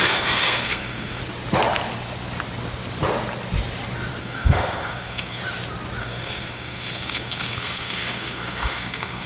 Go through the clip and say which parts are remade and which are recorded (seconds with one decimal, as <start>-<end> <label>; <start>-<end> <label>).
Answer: 0.0-1.2 remade; 1.2-4.2 recorded; 4.2-5.4 remade; 5.4-6.0 recorded; 6.0-9.3 remade